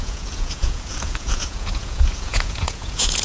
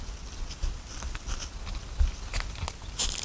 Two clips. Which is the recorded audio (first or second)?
second